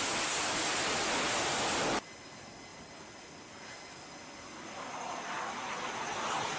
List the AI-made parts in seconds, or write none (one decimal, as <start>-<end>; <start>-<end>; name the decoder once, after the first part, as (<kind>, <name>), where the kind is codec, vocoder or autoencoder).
none